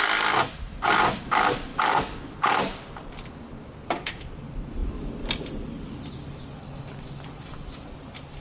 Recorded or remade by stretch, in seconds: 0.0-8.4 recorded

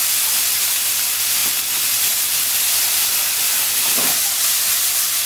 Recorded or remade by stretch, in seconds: 0.0-5.3 recorded

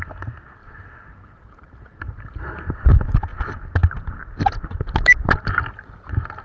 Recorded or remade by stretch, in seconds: 0.0-0.6 recorded; 0.6-2.7 remade; 2.7-6.4 recorded

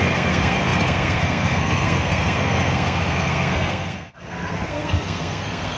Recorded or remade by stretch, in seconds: 0.0-5.8 remade

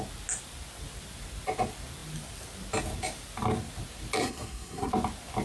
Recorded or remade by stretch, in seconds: 0.0-4.2 recorded; 4.2-4.9 remade; 4.9-5.4 recorded

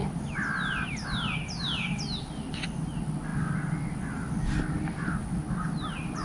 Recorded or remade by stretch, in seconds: 0.0-2.5 remade; 2.5-6.2 recorded

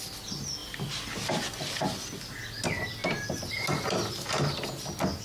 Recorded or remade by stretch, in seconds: 0.0-5.2 recorded

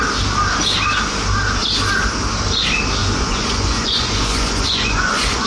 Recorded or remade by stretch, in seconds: 0.0-3.0 recorded; 3.0-5.5 remade